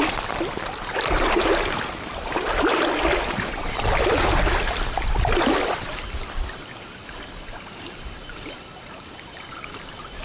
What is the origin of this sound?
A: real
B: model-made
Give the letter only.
A